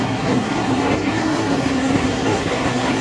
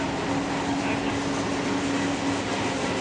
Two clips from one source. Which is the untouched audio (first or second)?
second